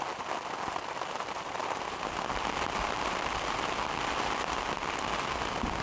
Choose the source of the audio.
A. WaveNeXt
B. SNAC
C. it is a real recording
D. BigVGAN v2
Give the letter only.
C